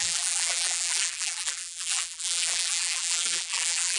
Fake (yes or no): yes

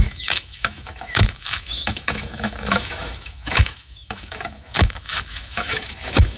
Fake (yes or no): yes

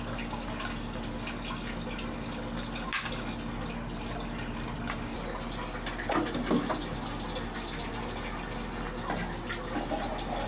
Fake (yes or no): no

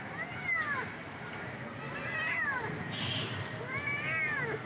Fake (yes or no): no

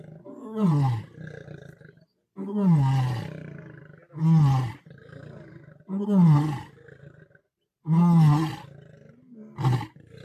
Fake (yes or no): no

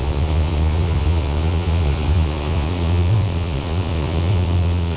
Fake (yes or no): yes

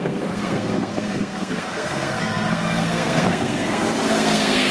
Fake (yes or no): yes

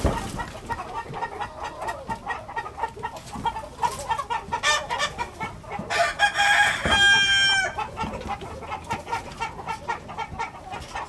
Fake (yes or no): no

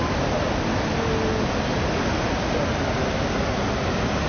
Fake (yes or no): no